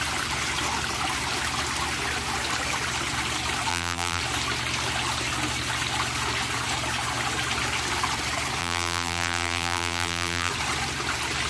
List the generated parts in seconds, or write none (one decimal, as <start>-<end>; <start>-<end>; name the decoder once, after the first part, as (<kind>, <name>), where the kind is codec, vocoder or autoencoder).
3.7-4.2 (vocoder, BigVGAN v2); 8.6-10.5